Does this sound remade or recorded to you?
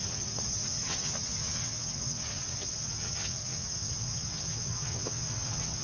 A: remade